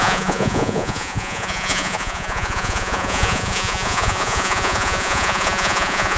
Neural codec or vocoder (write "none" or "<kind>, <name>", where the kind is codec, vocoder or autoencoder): vocoder, Vocos